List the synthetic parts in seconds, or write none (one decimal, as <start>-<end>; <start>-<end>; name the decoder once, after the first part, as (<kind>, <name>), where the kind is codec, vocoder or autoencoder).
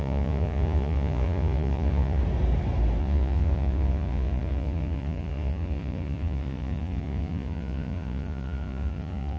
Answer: 0.0-2.2 (vocoder, Vocos); 3.0-9.4